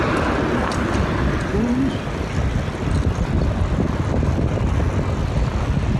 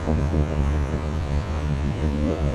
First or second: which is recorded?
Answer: first